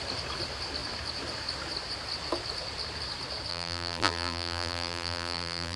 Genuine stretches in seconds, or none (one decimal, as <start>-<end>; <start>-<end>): 0.0-3.5